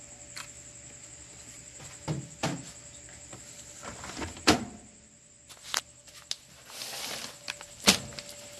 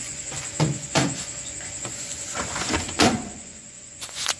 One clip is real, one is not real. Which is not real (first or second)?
second